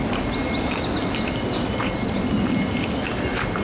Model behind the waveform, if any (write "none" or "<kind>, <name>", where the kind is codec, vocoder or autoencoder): none